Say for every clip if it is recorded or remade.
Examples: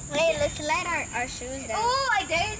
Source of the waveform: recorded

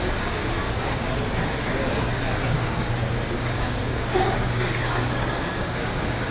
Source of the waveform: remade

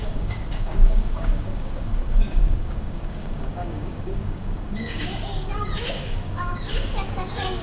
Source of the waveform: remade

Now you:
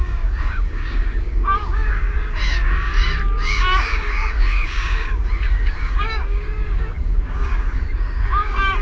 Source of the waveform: remade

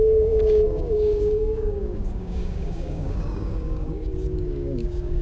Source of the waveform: remade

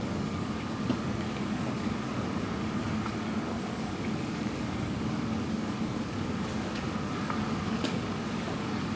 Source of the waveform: remade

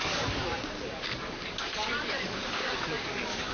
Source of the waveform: remade